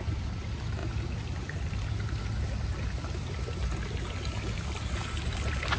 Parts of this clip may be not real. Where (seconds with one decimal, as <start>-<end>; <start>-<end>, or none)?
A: none